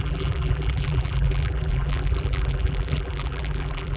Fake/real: fake